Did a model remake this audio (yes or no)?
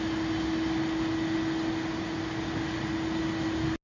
no